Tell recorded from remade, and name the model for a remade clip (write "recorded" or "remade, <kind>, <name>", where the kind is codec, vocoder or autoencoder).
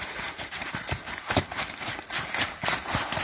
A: recorded